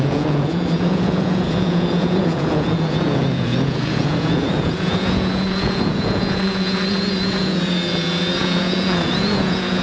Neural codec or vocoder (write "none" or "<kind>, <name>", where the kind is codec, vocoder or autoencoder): vocoder, Vocos